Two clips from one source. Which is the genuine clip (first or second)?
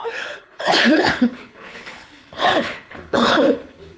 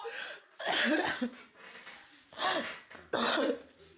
second